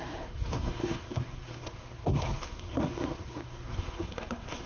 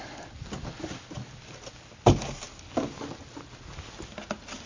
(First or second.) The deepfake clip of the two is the first